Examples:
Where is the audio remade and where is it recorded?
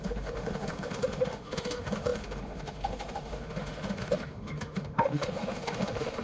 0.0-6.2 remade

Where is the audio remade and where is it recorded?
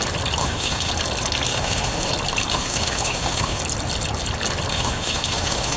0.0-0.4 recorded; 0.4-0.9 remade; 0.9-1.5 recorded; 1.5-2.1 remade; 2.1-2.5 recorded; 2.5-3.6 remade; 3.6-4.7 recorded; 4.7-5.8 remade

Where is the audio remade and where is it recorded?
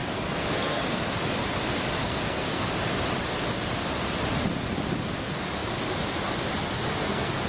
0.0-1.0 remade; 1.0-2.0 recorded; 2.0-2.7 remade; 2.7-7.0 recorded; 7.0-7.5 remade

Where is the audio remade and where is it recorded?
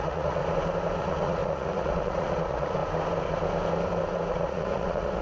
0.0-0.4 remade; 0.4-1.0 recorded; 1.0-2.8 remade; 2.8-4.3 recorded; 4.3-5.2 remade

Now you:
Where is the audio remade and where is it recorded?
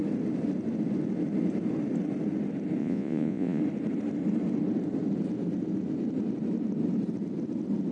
0.0-2.8 recorded; 2.8-3.6 remade; 3.6-7.9 recorded